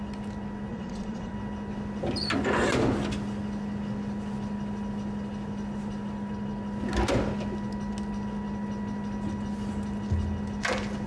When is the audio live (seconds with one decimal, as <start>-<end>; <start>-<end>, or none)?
0.0-0.7; 1.3-11.1